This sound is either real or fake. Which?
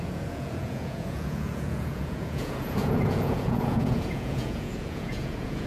fake